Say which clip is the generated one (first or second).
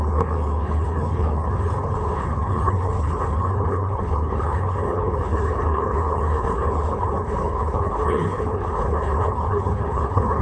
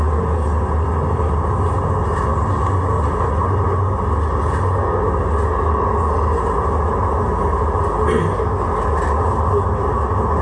first